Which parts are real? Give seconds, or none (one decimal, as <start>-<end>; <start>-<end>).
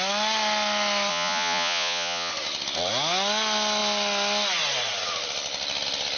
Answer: 0.0-1.1; 2.3-6.2